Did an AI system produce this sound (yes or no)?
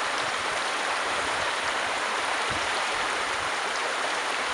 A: yes